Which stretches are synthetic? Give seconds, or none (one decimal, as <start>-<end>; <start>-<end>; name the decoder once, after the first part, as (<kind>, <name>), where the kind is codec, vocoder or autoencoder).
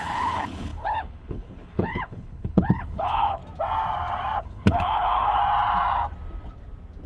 0.0-3.4 (codec, HILCodec); 4.4-5.4